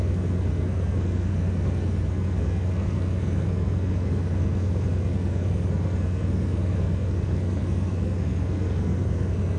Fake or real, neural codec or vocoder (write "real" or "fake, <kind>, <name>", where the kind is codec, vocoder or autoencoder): fake, codec, SNAC